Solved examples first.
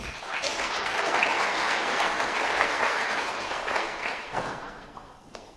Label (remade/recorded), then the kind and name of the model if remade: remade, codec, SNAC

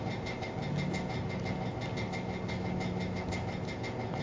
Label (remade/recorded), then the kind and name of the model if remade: recorded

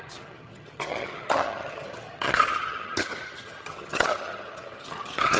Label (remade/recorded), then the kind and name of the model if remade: remade, vocoder, HiFi-GAN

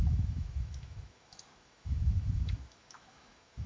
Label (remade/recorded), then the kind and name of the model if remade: remade, autoencoder, DAC-VAE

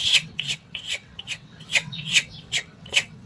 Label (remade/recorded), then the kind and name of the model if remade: remade, vocoder, WaveNeXt